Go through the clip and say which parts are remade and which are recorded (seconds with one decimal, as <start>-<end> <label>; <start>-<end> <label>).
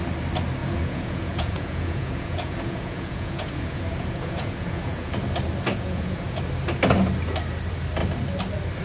0.0-0.6 recorded; 0.6-5.1 remade; 5.1-5.7 recorded; 5.7-6.4 remade; 6.4-8.8 recorded